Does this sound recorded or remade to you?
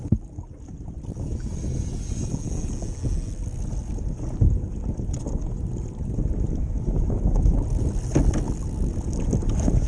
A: recorded